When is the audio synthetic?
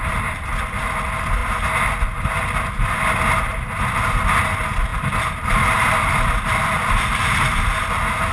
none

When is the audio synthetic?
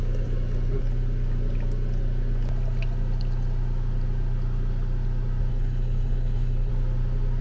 5.5-6.7 (codec, HILCodec)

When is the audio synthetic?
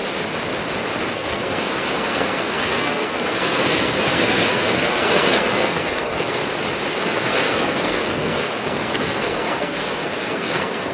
1.1-6.4 (codec, SNAC); 6.9-10.9